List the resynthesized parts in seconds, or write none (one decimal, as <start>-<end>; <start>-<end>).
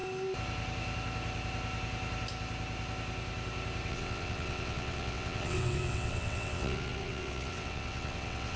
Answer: 3.9-8.6